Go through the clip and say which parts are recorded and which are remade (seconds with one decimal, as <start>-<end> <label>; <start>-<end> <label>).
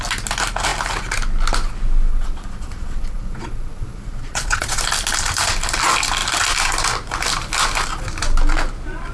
0.0-2.1 recorded; 2.1-4.8 remade; 4.8-9.1 recorded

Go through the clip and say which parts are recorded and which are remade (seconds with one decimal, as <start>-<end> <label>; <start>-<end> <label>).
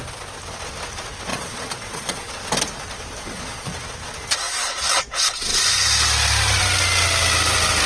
0.0-1.3 recorded; 1.3-2.4 remade; 2.4-3.2 recorded; 3.2-3.7 remade; 3.7-7.9 recorded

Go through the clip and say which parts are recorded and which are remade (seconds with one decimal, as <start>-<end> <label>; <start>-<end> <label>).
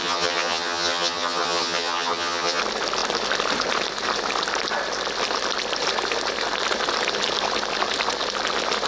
0.0-2.6 remade; 2.6-8.9 recorded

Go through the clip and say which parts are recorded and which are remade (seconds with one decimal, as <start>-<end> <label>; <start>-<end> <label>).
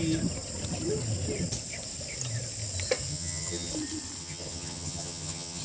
0.0-3.1 recorded; 3.1-3.7 remade; 3.7-4.2 recorded; 4.2-5.6 remade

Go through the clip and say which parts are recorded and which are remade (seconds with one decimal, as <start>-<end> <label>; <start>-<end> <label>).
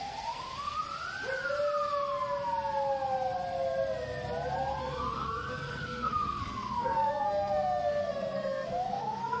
0.0-0.8 remade; 0.8-4.8 recorded; 4.8-9.4 remade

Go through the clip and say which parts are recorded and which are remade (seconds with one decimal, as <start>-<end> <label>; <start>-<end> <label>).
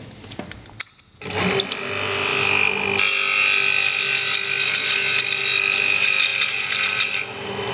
0.0-7.7 recorded